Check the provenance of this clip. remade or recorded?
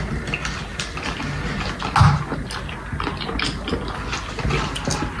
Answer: recorded